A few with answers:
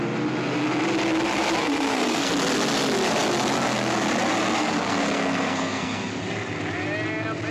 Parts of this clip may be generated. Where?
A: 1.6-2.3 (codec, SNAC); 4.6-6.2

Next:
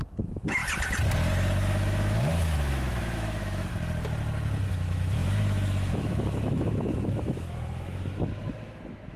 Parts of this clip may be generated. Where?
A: 0.0-0.6 (autoencoder, DAC-VAE); 1.3-3.7; 4.7-9.2